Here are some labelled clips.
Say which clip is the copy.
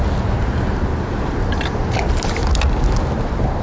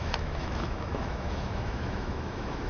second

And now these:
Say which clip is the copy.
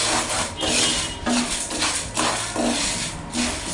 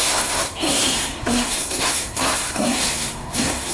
second